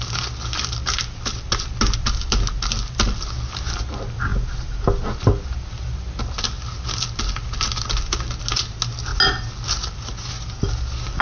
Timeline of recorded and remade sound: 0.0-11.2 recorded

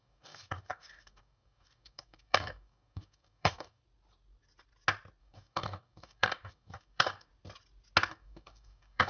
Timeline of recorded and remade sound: 0.0-3.8 remade; 3.8-5.2 recorded; 5.2-7.3 remade; 7.3-8.1 recorded; 8.1-9.1 remade

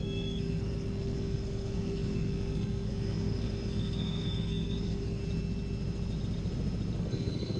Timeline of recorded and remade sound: 0.0-5.2 remade; 5.2-7.0 recorded; 7.0-7.6 remade

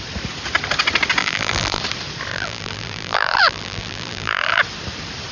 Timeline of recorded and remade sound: 0.0-1.2 recorded; 1.2-1.8 remade; 1.8-2.3 recorded; 2.3-4.6 remade; 4.6-5.3 recorded

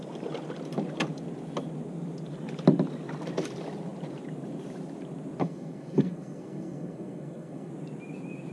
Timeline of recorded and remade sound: 0.0-5.4 recorded; 5.4-7.7 remade; 7.7-8.5 recorded

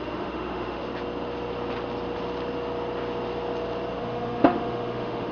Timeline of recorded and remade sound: 0.0-0.8 remade; 0.8-4.0 recorded; 4.0-5.3 remade

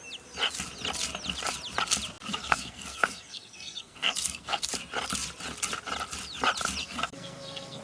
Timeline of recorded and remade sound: 0.0-2.3 recorded; 2.3-4.7 remade; 4.7-6.8 recorded; 6.8-7.8 remade

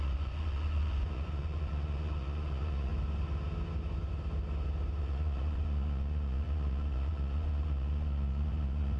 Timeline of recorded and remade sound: 0.0-2.9 remade; 2.9-5.0 recorded; 5.0-9.0 remade